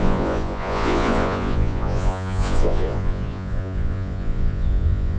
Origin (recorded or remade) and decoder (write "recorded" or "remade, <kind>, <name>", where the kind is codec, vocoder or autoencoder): remade, vocoder, Vocos